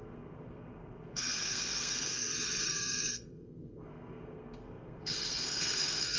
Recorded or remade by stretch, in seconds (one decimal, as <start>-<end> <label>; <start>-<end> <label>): 0.0-6.2 remade